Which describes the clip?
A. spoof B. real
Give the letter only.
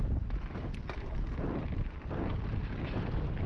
B